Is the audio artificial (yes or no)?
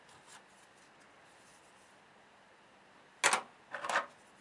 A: no